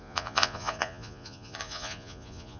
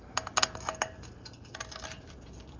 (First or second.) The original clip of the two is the second